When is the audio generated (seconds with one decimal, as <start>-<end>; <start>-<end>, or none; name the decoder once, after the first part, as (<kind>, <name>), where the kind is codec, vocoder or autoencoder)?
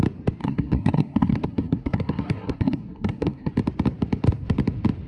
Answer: 0.4-3.5 (codec, SNAC)